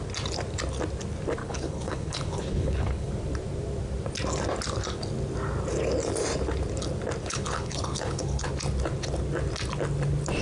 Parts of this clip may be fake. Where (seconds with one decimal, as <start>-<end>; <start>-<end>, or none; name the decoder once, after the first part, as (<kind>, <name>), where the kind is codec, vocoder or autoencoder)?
1.4-3.1 (codec, HILCodec); 7.2-8.5